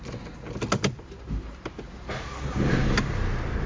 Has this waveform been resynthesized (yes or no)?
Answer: no